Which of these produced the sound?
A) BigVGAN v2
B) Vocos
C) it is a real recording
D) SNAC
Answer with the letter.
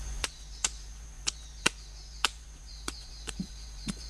B